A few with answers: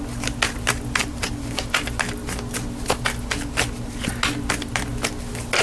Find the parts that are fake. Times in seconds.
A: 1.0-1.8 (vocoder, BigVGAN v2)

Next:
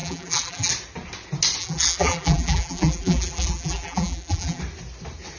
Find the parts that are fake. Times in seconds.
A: 0.0-0.7 (vocoder, BigVGAN v2); 1.6-4.6

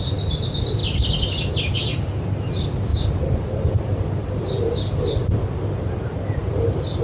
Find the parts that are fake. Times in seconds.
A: 0.8-1.8 (vocoder, BigVGAN v2); 2.9-7.0

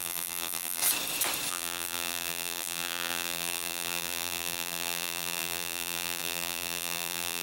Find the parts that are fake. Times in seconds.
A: 0.0-0.8 (vocoder, BigVGAN v2); 1.5-7.4

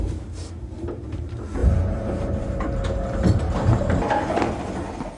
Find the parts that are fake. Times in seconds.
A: 1.6-3.8 (vocoder, BigVGAN v2)